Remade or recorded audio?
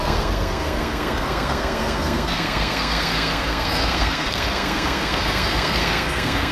remade